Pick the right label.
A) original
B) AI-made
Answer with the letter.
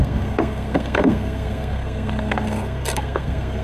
B